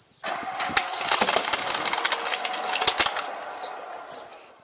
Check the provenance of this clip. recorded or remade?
recorded